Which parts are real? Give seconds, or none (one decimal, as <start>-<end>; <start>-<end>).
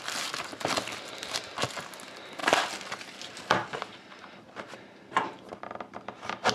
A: 0.0-6.5